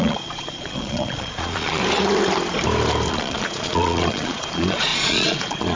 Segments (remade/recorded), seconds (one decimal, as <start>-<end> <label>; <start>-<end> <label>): 0.0-1.8 remade; 1.8-3.1 recorded; 3.1-5.8 remade